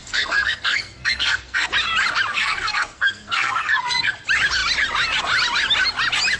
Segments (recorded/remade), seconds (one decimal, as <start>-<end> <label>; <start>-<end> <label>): 0.0-1.7 remade; 1.7-2.3 recorded; 2.3-4.1 remade; 4.1-6.4 recorded